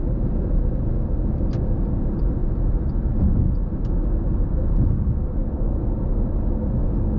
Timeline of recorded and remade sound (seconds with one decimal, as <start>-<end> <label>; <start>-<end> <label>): 0.0-7.2 recorded